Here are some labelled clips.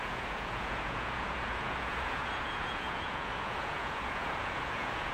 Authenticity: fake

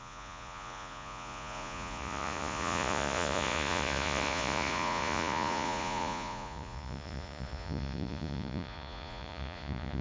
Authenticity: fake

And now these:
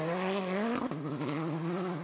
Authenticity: real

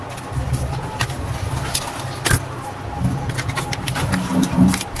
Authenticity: real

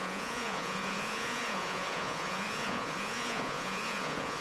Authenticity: fake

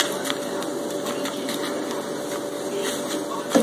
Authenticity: real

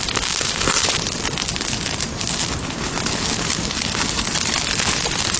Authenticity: real